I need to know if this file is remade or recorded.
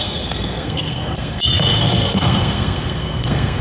remade